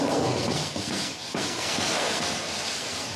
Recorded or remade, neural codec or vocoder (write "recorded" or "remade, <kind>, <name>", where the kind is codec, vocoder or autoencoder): remade, codec, SNAC